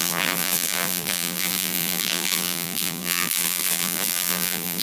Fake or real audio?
fake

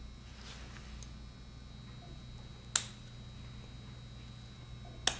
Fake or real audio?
real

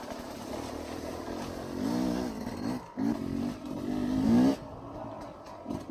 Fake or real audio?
real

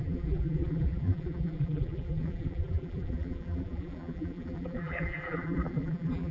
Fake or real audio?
fake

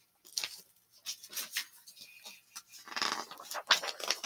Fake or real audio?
real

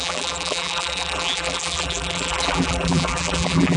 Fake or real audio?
fake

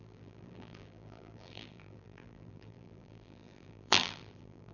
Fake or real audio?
fake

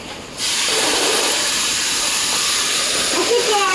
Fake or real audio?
fake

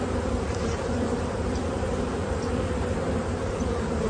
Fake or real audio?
fake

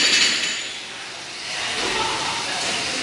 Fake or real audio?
real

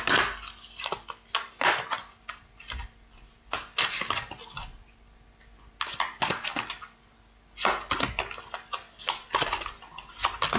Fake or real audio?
real